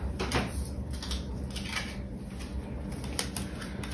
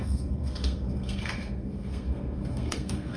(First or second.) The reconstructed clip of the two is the second